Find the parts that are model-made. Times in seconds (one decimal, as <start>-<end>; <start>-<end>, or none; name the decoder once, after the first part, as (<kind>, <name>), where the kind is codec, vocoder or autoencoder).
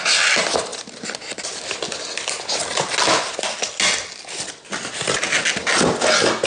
none